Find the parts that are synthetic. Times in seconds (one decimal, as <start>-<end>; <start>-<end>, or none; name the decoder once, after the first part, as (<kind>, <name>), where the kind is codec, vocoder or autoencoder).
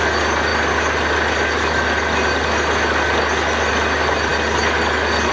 none